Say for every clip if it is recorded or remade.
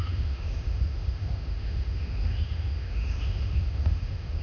remade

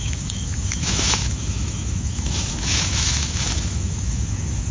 remade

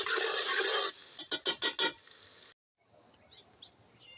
recorded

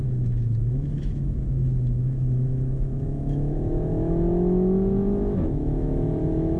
remade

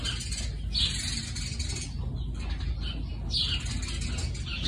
recorded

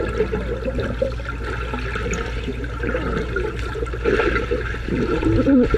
recorded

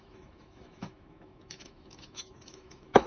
remade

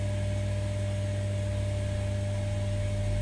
recorded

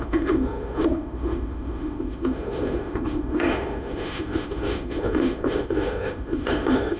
remade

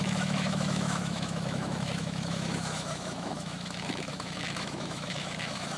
remade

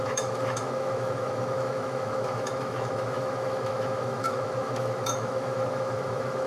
remade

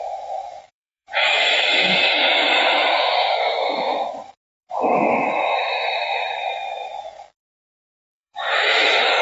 remade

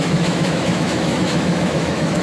remade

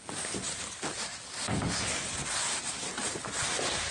recorded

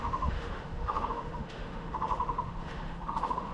remade